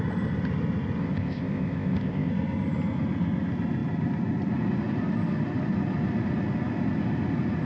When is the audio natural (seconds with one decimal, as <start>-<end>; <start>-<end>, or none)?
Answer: 0.0-1.0; 2.3-7.7